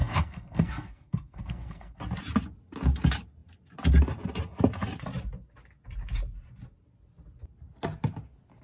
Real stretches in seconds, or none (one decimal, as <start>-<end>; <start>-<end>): 2.0-8.6